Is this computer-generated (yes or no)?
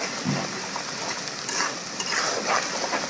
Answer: no